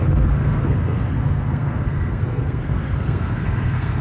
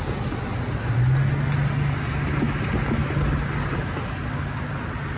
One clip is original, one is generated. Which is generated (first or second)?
first